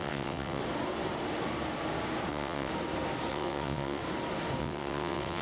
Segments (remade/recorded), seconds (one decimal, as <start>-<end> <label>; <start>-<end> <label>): 0.0-0.6 remade; 0.6-2.3 recorded; 2.3-2.7 remade; 2.7-3.3 recorded; 3.3-4.0 remade; 4.0-4.6 recorded; 4.6-5.4 remade